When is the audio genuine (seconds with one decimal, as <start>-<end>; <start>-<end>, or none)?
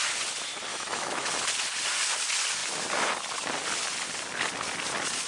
0.0-0.7; 1.3-5.3